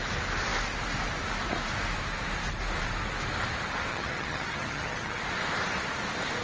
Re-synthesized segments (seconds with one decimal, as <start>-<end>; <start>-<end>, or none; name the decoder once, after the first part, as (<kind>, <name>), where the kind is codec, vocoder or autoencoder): 3.9-5.2 (vocoder, HiFi-GAN)